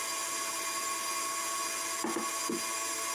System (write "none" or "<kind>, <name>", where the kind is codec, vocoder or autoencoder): none